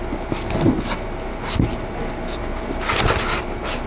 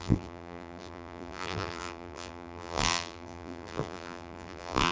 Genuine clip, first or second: first